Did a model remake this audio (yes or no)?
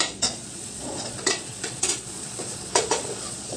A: yes